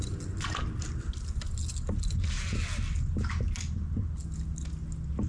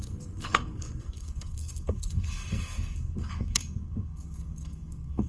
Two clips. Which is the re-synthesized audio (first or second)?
second